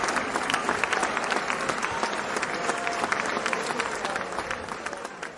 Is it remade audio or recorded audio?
recorded